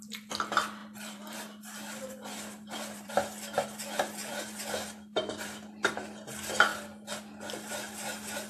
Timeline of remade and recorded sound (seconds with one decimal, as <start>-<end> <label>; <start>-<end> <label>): 0.0-0.8 recorded; 0.8-3.1 remade; 3.1-4.2 recorded; 4.2-5.9 remade; 5.9-8.5 recorded